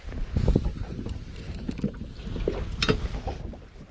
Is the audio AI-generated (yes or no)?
no